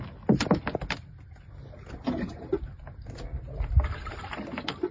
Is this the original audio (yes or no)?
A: yes